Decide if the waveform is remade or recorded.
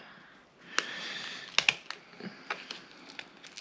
recorded